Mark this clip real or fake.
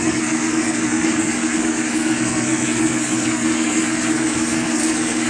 fake